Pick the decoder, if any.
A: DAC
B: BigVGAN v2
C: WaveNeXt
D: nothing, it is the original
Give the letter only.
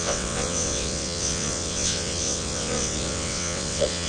C